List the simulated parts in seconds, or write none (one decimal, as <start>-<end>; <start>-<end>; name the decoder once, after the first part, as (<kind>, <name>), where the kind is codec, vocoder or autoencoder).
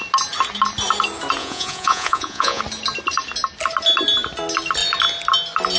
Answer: 1.4-2.6 (vocoder, Vocos)